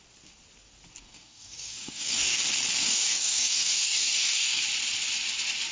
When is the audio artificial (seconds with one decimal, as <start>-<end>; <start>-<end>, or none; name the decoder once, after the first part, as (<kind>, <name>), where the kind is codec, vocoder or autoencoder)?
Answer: 1.0-2.4 (codec, DAC); 2.8-4.6